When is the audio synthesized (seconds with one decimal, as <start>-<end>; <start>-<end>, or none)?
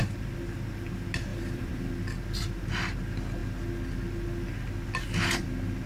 1.3-1.9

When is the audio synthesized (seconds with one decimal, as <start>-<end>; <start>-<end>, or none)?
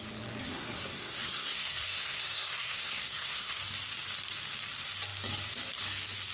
0.4-3.6